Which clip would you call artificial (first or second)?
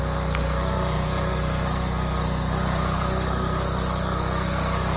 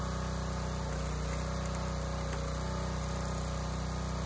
first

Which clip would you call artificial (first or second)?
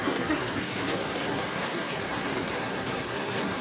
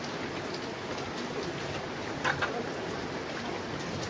first